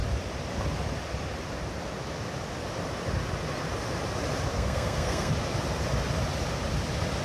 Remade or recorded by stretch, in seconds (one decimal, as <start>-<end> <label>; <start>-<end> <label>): 0.0-4.5 recorded; 4.5-5.3 remade; 5.3-7.2 recorded